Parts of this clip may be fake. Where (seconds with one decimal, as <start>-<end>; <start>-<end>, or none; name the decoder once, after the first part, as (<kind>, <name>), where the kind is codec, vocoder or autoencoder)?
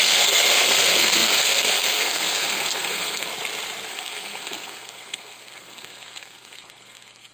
0.0-3.3 (codec, SNAC); 3.9-7.3